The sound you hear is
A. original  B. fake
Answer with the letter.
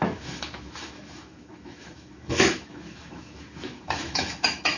B